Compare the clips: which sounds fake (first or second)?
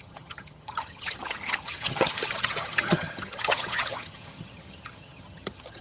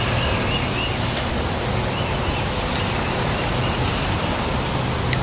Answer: first